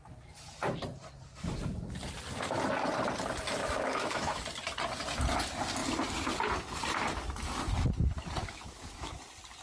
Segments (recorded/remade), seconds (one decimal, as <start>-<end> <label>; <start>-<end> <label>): 0.0-3.6 recorded; 3.6-4.4 remade; 4.4-8.4 recorded; 8.4-9.1 remade; 9.1-9.6 recorded